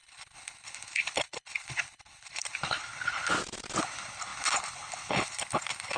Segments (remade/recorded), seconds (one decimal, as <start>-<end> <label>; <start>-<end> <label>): 0.0-3.3 remade; 3.3-3.8 recorded; 3.8-6.0 remade